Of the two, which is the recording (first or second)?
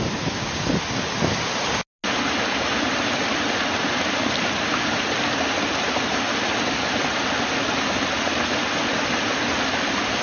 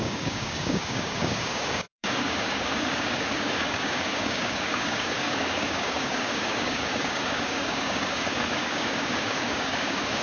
first